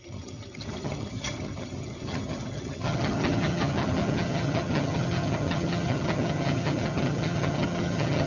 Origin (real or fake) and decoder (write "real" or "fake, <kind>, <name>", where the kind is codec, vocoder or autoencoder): fake, vocoder, HiFi-GAN